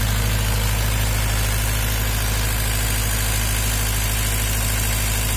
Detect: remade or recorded recorded